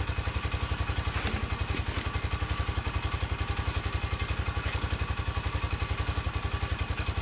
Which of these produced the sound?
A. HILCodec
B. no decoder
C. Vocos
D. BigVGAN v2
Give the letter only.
B